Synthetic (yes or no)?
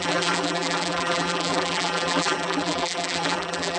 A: yes